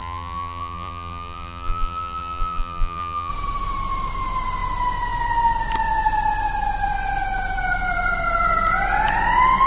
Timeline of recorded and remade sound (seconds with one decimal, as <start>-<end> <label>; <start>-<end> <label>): 0.0-3.3 remade; 3.3-9.7 recorded